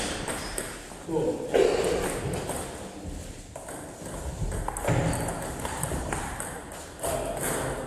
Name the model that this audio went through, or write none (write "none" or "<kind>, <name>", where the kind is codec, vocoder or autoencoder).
none